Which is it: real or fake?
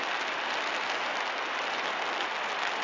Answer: real